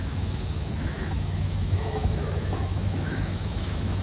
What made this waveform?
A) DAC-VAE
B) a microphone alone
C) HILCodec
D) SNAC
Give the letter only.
A